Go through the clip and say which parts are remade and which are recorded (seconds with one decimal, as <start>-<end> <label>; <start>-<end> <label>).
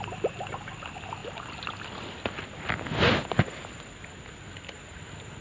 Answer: 0.0-5.4 recorded